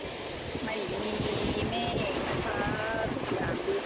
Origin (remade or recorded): recorded